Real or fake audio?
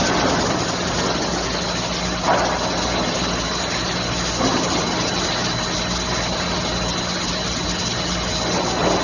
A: real